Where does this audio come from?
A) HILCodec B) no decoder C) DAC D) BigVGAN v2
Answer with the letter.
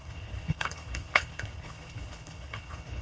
A